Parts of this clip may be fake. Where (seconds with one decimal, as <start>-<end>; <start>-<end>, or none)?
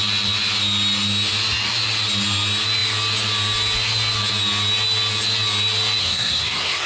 6.0-6.9